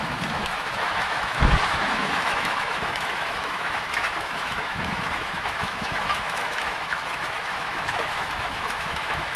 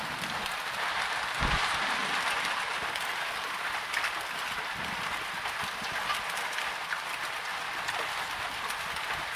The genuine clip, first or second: second